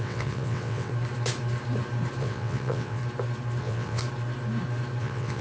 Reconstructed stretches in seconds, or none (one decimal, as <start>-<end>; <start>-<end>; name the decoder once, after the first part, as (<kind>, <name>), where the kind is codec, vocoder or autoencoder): 0.0-0.9 (vocoder, WaveNeXt); 2.2-3.0; 3.6-4.0; 5.0-5.4